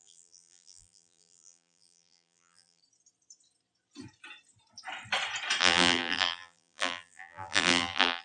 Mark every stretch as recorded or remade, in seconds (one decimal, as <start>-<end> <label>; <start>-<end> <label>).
0.0-2.8 remade; 2.8-5.6 recorded; 5.6-8.2 remade